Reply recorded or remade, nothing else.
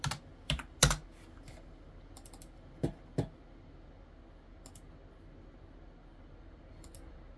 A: recorded